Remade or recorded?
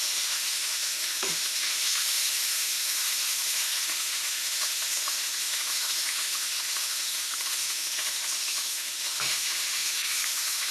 remade